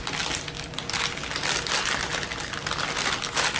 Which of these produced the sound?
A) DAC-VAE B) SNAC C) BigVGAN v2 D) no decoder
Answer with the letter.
D